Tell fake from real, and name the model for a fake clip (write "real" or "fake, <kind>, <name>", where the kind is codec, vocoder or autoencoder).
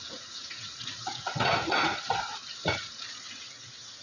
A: fake, vocoder, Vocos